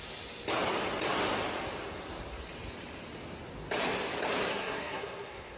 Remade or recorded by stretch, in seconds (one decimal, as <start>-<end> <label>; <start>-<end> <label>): 0.0-4.5 recorded; 4.5-5.6 remade